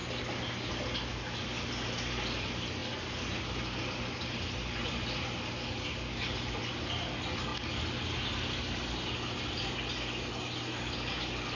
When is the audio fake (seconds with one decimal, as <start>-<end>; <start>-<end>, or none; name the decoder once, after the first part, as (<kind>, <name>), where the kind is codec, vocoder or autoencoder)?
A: none